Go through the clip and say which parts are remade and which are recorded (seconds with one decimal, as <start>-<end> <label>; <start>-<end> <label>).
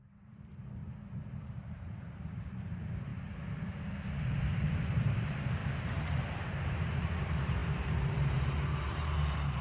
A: 0.0-0.8 remade; 0.8-1.4 recorded; 1.4-3.1 remade; 3.1-4.7 recorded; 4.7-5.6 remade; 5.6-6.2 recorded; 6.2-9.6 remade